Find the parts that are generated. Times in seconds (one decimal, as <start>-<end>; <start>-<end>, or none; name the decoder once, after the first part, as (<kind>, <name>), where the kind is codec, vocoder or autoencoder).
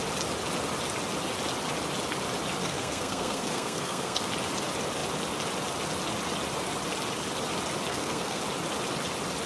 2.6-4.3 (codec, SNAC); 7.9-8.4